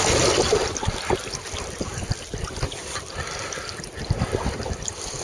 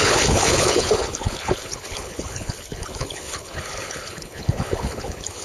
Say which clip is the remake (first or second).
second